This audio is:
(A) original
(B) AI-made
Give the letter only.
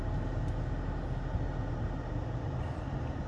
A